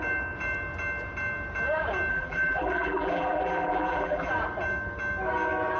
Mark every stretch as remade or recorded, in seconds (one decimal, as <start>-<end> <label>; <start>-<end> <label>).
0.0-2.1 recorded; 2.1-4.3 remade; 4.3-5.8 recorded